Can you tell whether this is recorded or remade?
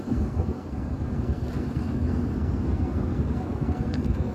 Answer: remade